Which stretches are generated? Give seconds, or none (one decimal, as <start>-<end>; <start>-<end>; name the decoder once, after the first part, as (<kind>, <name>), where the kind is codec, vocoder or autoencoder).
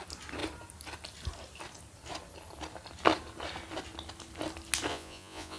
4.9-5.6 (vocoder, Vocos)